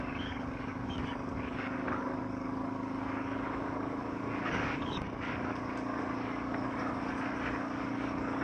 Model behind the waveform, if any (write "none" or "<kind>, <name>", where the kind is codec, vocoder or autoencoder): codec, DAC